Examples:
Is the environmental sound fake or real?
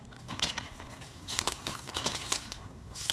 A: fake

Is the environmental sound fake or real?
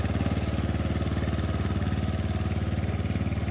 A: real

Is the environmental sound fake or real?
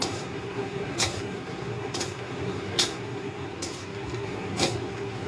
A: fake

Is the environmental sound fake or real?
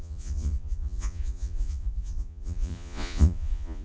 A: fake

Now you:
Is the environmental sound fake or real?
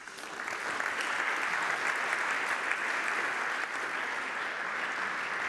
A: real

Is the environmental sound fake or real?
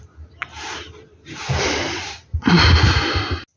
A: real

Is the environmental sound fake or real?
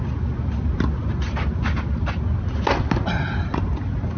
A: real